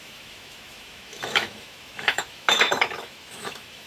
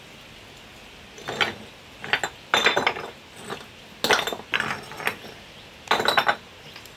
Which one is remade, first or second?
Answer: first